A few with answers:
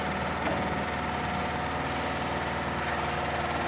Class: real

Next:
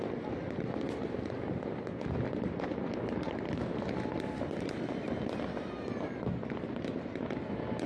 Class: real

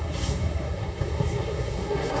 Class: fake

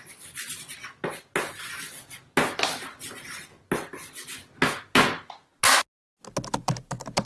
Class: real